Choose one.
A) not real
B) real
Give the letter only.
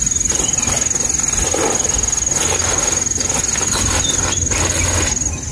B